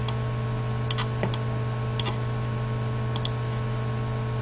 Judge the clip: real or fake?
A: real